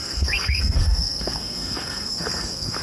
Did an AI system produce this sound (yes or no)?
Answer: yes